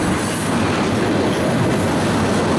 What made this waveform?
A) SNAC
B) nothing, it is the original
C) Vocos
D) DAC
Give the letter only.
B